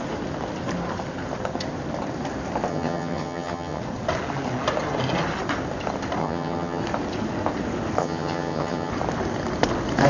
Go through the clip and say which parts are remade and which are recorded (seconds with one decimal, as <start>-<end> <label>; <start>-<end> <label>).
0.0-2.7 recorded; 2.7-3.8 remade; 3.8-6.2 recorded; 6.2-6.8 remade; 6.8-8.0 recorded; 8.0-8.9 remade; 8.9-10.1 recorded